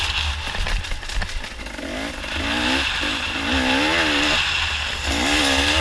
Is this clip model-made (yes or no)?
no